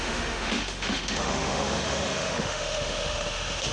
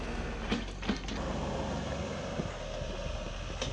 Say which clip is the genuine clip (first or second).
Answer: second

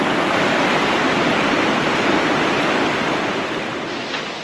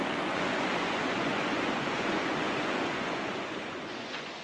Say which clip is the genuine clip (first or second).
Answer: first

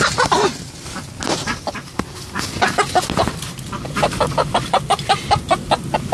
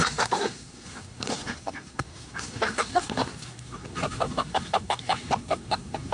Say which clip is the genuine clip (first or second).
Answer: first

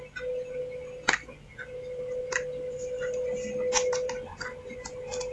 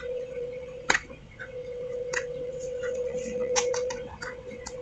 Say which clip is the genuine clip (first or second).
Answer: first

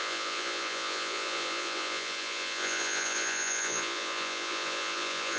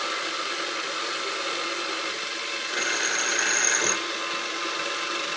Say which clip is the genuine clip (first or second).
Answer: second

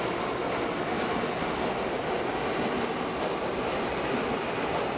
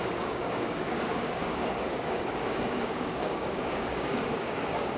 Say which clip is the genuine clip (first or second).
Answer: first